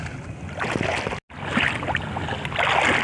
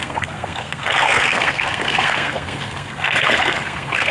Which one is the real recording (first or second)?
first